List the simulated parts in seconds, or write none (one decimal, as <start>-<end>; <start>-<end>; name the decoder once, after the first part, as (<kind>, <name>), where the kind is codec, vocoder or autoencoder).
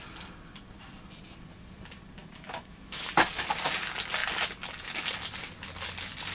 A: 2.2-3.1 (autoencoder, DAC-VAE)